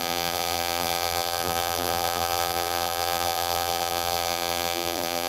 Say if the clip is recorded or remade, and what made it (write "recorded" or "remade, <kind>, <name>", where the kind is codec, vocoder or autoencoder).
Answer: remade, vocoder, BigVGAN v2